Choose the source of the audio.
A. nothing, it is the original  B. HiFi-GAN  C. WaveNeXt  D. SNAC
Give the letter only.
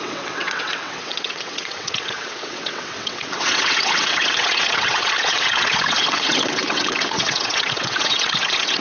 C